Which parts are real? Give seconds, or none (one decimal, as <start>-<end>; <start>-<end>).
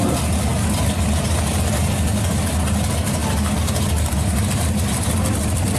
0.0-5.8